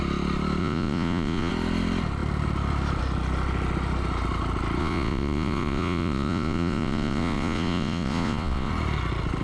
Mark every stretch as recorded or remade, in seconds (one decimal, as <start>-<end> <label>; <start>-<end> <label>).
0.0-0.6 recorded; 0.6-1.5 remade; 1.5-4.8 recorded; 4.8-8.7 remade; 8.7-9.4 recorded